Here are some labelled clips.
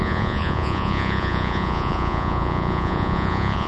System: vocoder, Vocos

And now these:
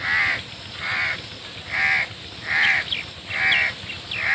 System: none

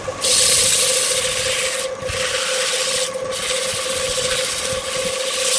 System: none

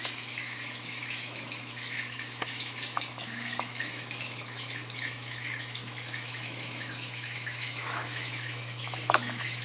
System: autoencoder, DAC-VAE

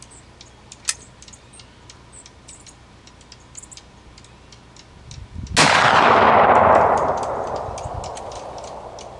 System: none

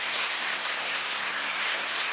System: codec, SNAC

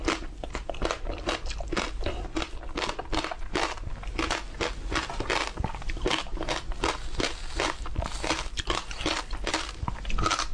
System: none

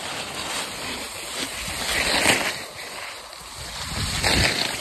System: none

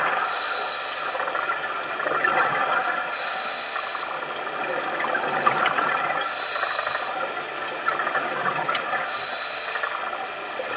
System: none